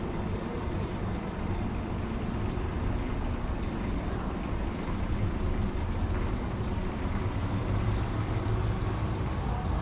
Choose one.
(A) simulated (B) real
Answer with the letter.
A